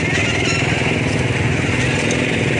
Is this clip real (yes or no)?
yes